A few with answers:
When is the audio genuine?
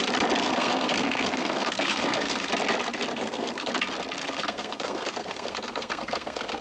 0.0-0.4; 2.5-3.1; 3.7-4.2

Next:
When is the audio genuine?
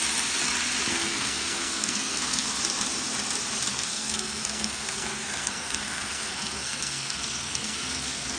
0.0-0.9; 2.6-3.7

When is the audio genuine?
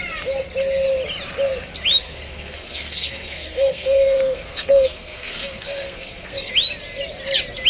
0.0-2.0; 6.5-7.7